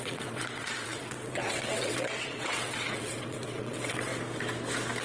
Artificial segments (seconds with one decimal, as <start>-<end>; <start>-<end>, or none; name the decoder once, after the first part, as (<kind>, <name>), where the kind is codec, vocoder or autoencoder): 0.0-4.1 (vocoder, WaveNeXt)

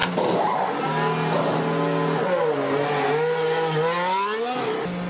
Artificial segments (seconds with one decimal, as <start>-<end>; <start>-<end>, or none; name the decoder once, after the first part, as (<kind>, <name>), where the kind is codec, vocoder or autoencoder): none

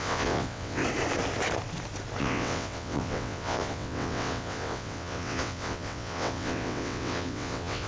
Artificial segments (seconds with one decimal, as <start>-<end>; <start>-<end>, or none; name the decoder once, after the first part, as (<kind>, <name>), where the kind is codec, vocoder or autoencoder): 0.0-0.8 (vocoder, WaveNeXt); 2.2-7.9

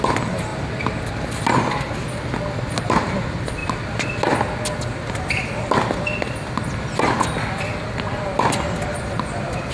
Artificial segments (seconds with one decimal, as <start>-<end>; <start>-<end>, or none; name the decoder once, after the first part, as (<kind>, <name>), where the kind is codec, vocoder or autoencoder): none

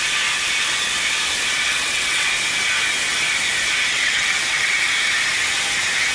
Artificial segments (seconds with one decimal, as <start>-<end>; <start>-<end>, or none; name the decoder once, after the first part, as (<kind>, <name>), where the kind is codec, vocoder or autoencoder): 1.7-2.3 (vocoder, WaveNeXt); 3.9-4.9

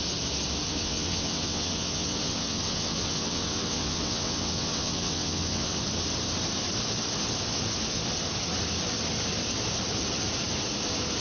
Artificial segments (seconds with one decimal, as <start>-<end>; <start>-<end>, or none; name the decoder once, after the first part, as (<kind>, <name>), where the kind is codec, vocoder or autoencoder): 0.7-5.8 (vocoder, WaveNeXt)

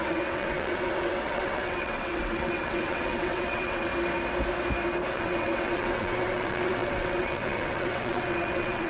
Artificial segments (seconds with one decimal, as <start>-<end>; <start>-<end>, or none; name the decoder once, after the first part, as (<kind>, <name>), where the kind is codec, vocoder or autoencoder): 0.0-3.9 (vocoder, WaveNeXt); 5.1-8.9